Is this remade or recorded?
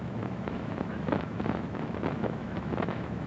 remade